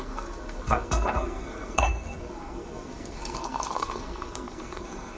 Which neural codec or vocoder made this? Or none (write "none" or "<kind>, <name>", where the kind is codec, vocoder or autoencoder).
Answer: codec, SNAC